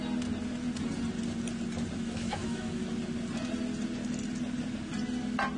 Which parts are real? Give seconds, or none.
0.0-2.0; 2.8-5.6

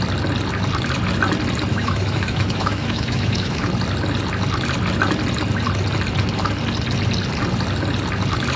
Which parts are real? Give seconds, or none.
0.0-1.7; 3.7-8.6